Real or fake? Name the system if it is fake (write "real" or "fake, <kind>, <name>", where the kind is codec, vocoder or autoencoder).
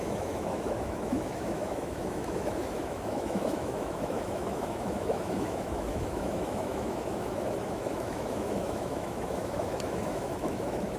fake, autoencoder, DAC-VAE